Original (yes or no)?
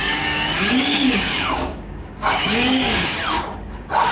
no